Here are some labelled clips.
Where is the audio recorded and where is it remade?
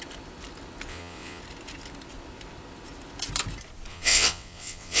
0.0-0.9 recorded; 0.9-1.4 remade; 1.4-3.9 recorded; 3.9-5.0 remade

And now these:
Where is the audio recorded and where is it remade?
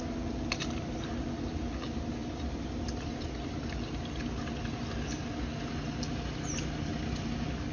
0.0-7.7 recorded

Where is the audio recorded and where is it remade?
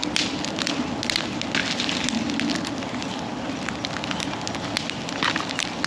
0.0-5.9 recorded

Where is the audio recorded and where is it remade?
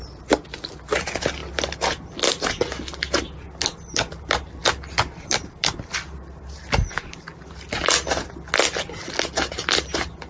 0.0-10.3 recorded